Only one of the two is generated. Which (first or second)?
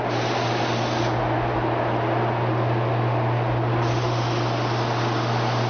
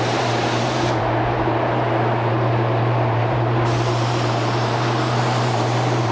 second